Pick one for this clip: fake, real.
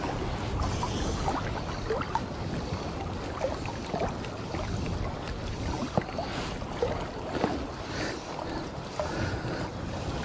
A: real